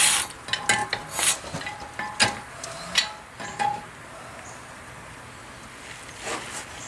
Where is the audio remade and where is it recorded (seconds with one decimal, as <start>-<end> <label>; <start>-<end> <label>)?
0.0-6.9 recorded